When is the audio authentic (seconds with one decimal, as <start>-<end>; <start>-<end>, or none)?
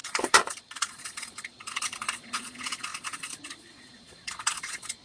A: none